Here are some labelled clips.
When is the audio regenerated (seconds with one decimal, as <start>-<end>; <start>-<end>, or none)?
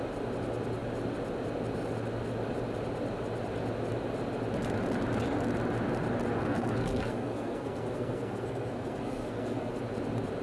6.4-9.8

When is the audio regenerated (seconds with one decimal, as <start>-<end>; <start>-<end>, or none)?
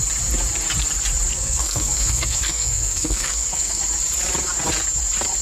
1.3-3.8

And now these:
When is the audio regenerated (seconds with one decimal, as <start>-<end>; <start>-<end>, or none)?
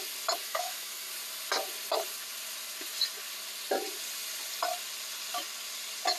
0.4-1.1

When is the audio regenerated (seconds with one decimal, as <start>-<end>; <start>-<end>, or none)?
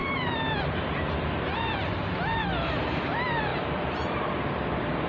0.0-3.0; 3.5-4.4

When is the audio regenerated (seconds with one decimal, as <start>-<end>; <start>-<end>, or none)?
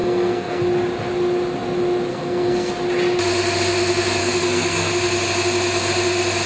0.0-0.6; 2.1-2.7; 4.2-4.9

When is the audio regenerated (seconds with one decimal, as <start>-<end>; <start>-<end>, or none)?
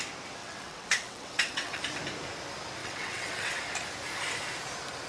0.4-1.8; 2.8-3.5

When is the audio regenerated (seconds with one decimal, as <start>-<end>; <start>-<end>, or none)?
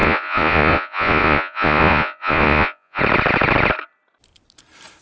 0.0-3.0